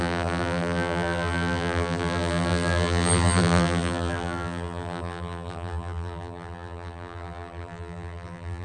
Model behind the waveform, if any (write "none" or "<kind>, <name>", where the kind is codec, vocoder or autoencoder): vocoder, BigVGAN v2